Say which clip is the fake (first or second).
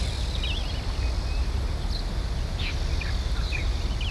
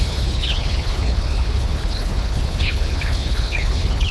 second